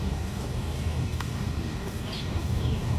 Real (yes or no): no